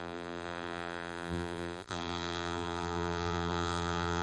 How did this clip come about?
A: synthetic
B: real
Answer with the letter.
A